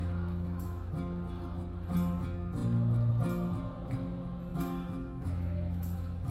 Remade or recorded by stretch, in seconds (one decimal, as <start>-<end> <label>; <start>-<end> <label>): 0.0-0.9 remade; 0.9-4.5 recorded; 4.5-6.3 remade